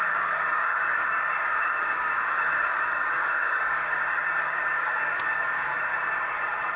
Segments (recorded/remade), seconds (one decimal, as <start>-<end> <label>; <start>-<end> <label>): 0.0-5.9 remade; 5.9-6.8 recorded